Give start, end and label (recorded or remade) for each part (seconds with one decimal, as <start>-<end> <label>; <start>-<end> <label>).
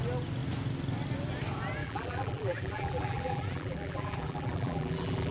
0.0-1.8 recorded; 1.8-5.3 remade